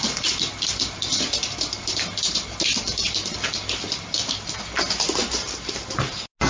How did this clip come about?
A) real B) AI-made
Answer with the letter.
A